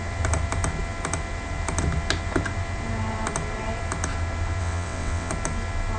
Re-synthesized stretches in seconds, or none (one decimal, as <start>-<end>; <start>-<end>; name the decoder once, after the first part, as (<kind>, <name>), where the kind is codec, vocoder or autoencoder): 4.6-5.3 (vocoder, WaveNeXt)